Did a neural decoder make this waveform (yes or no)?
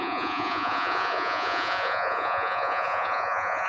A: yes